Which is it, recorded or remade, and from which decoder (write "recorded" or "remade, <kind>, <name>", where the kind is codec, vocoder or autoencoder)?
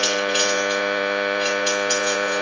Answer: remade, vocoder, Vocos